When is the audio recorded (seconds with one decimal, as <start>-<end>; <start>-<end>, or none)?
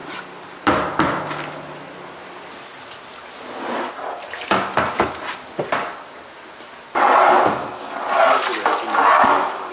0.0-9.7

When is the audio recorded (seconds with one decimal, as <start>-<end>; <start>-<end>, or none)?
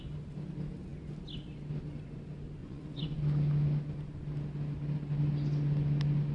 0.0-2.6; 3.2-6.3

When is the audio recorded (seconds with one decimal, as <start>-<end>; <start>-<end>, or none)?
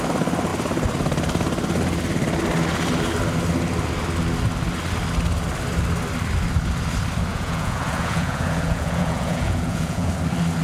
0.0-7.3; 10.1-10.6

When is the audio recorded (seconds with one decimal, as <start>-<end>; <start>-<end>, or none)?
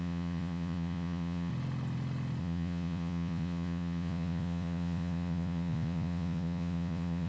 1.5-2.4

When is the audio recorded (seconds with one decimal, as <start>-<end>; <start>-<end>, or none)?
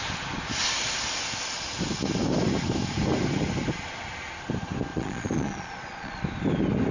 0.0-4.9; 6.2-6.9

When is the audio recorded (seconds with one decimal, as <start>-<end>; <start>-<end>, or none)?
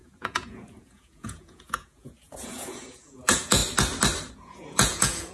3.6-4.3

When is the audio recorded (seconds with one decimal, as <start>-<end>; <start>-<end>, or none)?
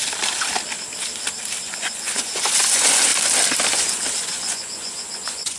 0.0-1.6; 3.1-3.7